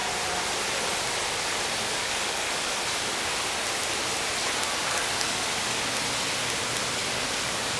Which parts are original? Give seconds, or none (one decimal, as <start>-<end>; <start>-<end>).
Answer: 0.0-2.0; 2.8-4.8; 5.8-7.0